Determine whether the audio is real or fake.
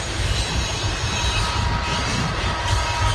real